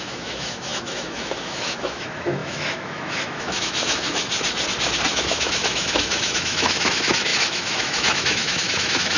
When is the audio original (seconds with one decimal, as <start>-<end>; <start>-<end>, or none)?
4.2-5.1